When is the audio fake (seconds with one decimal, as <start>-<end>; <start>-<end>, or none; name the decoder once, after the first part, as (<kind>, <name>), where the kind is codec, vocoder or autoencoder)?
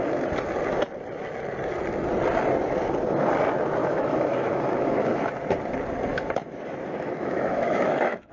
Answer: 3.8-5.3 (autoencoder, DAC-VAE); 6.1-8.3